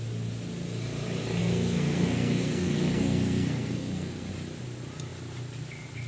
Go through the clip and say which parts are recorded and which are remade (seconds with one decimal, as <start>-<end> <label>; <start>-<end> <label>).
0.0-1.4 recorded; 1.4-4.3 remade; 4.3-6.1 recorded